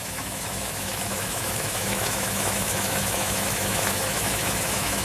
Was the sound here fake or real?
fake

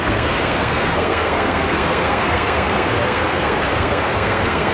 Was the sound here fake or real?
fake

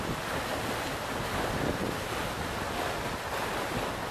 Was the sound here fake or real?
real